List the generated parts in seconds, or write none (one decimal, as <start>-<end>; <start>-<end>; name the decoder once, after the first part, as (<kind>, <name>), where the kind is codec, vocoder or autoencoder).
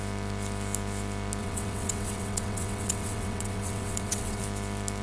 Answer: 1.4-4.4 (vocoder, WaveNeXt)